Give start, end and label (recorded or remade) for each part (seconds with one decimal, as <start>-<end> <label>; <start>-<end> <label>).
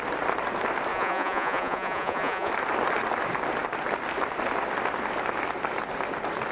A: 0.0-0.9 recorded; 0.9-2.5 remade; 2.5-6.5 recorded